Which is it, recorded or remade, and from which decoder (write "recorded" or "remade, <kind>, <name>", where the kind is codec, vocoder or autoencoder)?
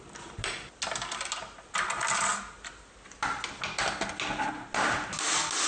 recorded